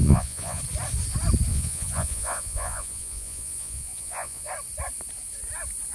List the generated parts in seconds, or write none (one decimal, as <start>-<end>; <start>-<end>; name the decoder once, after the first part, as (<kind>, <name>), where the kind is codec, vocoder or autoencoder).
0.0-0.6 (vocoder, Vocos); 1.5-4.5